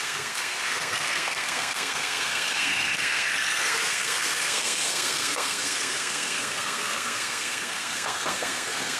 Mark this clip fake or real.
fake